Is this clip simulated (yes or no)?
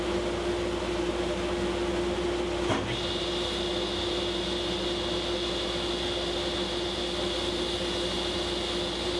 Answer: no